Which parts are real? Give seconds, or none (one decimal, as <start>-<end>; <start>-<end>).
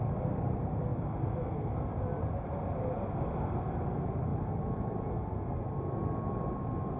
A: 0.0-7.0